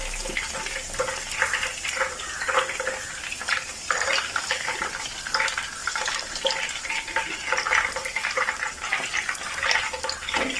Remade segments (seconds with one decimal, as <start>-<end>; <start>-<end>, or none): 5.8-7.3